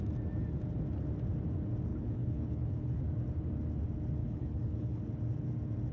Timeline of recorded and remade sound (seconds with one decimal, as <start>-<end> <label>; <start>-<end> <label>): 0.0-1.9 recorded; 1.9-3.0 remade; 3.0-4.2 recorded; 4.2-5.0 remade; 5.0-5.9 recorded